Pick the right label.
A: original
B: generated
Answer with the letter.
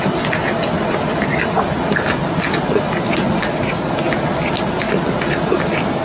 A